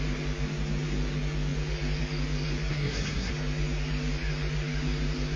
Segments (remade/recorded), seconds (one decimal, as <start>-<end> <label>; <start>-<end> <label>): 0.0-2.7 recorded; 2.7-3.3 remade; 3.3-5.4 recorded